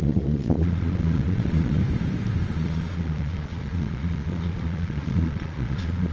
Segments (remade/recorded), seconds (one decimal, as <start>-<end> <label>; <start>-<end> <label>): 0.0-1.8 remade; 1.8-2.5 recorded; 2.5-6.1 remade

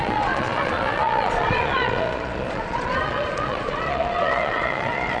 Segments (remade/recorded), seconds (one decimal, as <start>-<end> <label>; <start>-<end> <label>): 0.0-5.2 remade

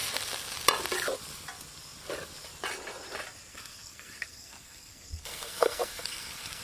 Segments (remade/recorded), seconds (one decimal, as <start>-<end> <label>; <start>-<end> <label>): 0.0-3.5 recorded; 3.5-6.6 remade

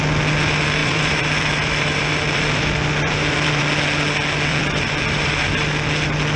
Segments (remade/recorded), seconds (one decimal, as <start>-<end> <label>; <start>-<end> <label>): 0.0-0.8 recorded; 0.8-3.6 remade; 3.6-4.5 recorded; 4.5-5.4 remade; 5.4-6.4 recorded

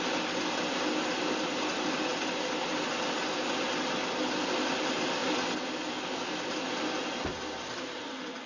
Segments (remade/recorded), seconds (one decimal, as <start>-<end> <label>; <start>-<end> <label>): 0.0-8.5 recorded

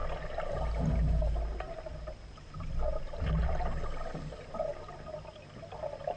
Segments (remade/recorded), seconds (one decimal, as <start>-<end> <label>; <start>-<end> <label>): 0.0-6.2 recorded

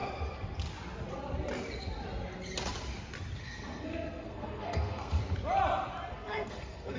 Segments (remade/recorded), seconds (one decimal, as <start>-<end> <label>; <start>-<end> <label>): 0.0-3.4 recorded; 3.4-5.2 remade; 5.2-6.1 recorded; 6.1-7.0 remade

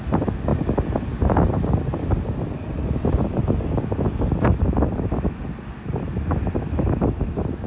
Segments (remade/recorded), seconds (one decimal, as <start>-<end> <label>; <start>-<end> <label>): 0.0-7.7 recorded